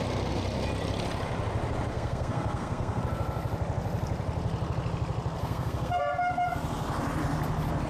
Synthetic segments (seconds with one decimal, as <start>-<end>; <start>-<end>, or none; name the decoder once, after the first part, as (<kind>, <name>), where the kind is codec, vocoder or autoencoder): 1.9-3.0 (codec, SNAC); 5.4-6.0